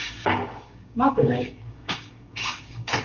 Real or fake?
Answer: fake